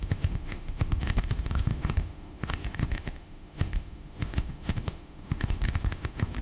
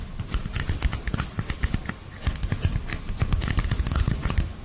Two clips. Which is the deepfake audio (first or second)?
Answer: first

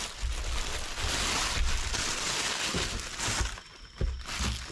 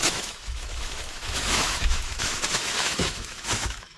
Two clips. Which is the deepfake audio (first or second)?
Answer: second